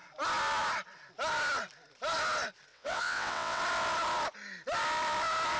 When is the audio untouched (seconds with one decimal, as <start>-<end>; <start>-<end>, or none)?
0.0-2.7; 3.6-5.6